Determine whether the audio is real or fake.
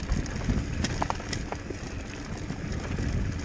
real